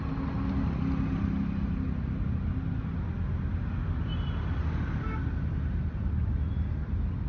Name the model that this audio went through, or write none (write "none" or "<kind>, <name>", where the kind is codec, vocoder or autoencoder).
none